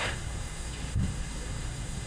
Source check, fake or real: fake